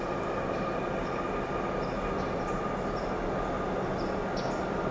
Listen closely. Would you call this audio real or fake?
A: real